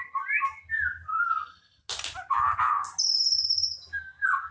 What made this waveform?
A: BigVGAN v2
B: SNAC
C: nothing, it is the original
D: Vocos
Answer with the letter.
C